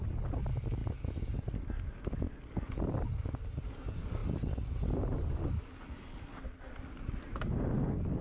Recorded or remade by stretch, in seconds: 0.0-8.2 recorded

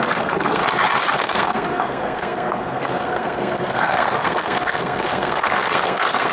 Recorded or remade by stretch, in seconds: 0.0-0.6 remade; 0.6-1.2 recorded; 1.2-6.3 remade

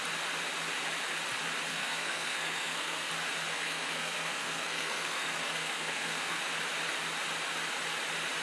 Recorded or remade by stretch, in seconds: 0.0-1.7 recorded; 1.7-3.1 remade; 3.1-3.5 recorded; 3.5-6.4 remade; 6.4-8.4 recorded

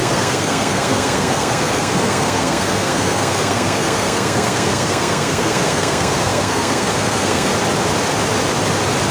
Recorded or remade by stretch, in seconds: 0.0-7.5 remade; 7.5-9.1 recorded

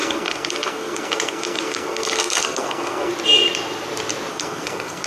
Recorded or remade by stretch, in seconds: 0.0-3.1 remade; 3.1-4.3 recorded; 4.3-5.1 remade